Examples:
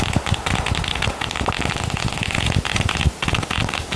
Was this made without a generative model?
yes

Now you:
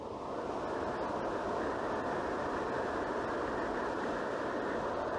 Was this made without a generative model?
yes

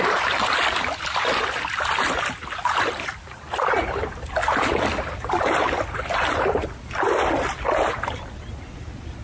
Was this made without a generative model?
yes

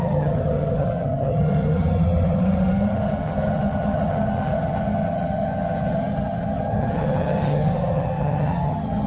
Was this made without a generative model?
no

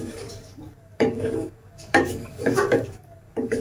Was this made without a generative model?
no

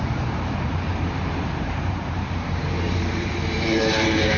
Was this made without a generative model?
no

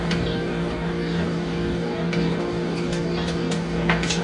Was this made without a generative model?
no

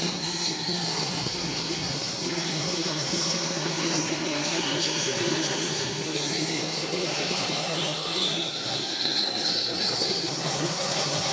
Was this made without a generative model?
no